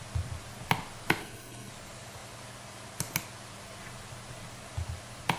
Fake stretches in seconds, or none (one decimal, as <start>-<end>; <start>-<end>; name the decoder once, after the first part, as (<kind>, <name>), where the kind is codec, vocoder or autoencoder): 1.2-1.7 (codec, SNAC)